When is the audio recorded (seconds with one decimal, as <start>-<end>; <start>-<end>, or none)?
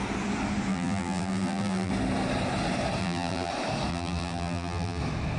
0.0-0.7; 1.9-3.0; 3.5-3.9; 5.0-5.4